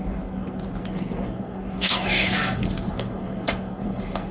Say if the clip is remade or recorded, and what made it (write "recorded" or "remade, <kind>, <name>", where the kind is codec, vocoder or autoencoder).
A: remade, codec, SNAC